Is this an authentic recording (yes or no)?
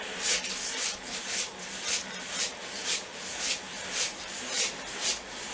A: no